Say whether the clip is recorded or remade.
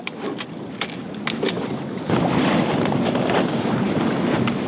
recorded